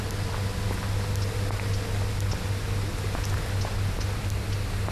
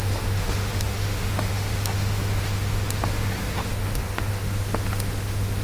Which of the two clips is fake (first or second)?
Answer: second